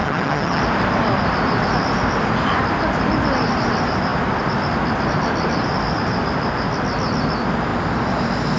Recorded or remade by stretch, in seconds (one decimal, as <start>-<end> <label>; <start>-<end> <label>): 0.0-0.6 remade; 0.6-8.6 recorded